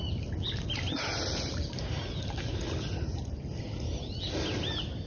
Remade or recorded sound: recorded